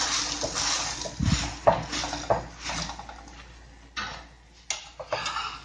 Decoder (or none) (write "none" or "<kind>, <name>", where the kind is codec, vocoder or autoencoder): none